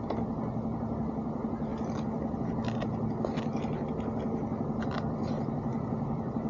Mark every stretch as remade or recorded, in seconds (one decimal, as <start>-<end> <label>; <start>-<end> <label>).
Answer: 0.0-6.5 recorded